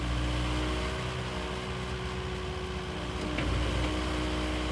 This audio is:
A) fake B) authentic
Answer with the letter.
B